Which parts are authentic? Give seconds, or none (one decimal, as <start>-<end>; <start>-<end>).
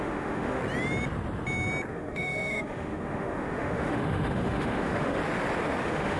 0.6-1.9; 5.2-5.8